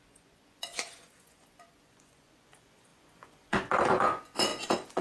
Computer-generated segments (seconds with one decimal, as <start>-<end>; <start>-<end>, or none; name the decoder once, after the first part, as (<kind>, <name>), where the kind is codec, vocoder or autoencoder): 0.0-5.0 (vocoder, Vocos)